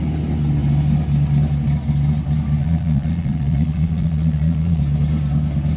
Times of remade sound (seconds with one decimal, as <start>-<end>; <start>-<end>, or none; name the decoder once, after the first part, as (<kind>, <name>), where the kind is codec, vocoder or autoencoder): 2.6-4.8 (vocoder, Vocos)